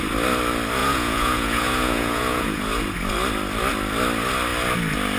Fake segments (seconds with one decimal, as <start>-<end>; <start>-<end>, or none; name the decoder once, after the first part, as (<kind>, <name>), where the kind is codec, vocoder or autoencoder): 0.8-2.6 (vocoder, Vocos)